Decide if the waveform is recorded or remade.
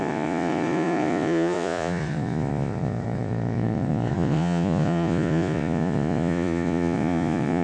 remade